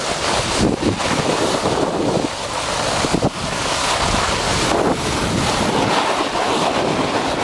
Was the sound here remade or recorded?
recorded